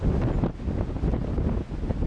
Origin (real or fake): real